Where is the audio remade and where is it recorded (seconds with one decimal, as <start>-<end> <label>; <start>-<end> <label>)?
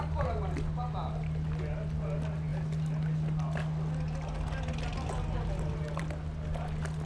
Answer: 0.0-7.1 recorded